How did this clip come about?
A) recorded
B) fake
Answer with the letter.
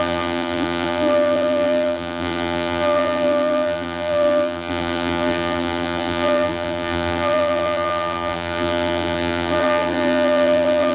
B